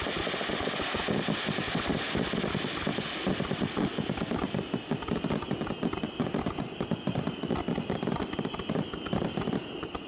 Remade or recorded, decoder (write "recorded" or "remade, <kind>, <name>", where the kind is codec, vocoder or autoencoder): recorded